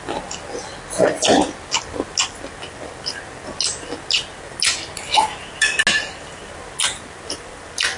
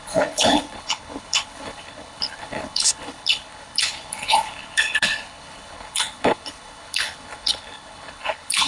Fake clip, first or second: second